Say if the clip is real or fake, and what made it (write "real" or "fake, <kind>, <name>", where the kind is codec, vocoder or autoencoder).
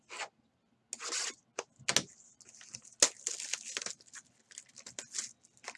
real